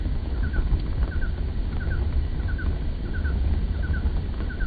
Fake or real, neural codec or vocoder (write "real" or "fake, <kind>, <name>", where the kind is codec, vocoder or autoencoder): real